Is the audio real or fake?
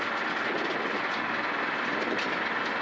real